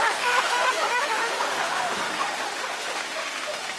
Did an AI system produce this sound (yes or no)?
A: yes